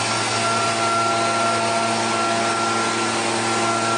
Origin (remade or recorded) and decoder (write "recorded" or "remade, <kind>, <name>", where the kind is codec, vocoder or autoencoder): recorded